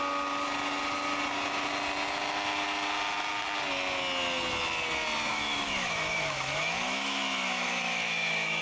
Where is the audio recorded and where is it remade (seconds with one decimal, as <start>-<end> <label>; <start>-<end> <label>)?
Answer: 0.0-5.3 recorded; 5.3-8.6 remade